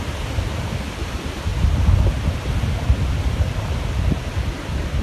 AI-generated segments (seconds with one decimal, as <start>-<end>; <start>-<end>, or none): 0.0-1.5; 4.5-5.0